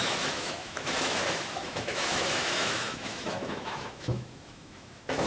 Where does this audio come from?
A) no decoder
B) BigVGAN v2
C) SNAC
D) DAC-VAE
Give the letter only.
D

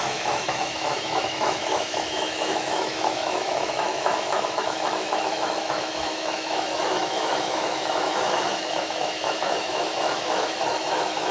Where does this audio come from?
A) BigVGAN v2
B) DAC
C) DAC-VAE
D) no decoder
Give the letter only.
C